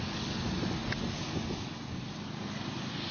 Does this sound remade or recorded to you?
recorded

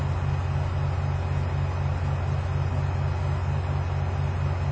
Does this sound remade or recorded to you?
recorded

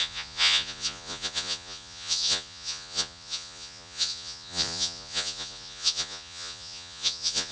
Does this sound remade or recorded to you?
remade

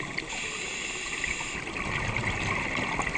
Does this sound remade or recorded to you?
recorded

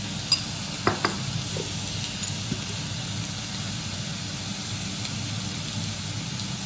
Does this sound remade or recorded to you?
recorded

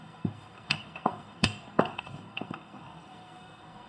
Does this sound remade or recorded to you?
remade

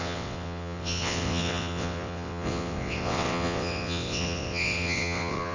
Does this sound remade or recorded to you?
remade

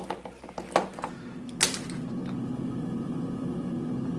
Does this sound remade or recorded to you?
recorded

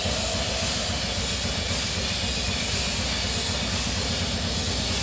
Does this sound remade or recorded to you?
recorded